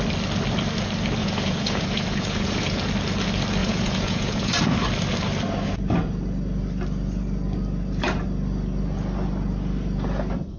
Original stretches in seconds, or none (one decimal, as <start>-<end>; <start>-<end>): 0.0-1.2; 2.9-3.6; 4.5-10.6